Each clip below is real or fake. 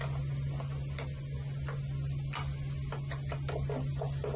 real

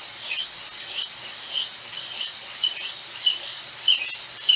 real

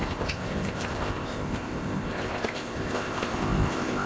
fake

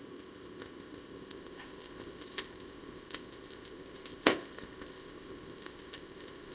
fake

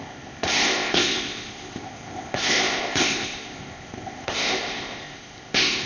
fake